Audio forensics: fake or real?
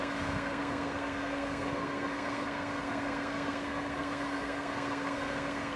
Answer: fake